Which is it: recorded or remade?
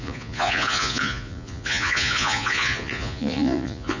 remade